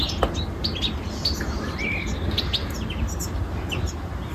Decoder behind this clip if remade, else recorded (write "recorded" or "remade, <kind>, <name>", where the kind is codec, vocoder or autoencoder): recorded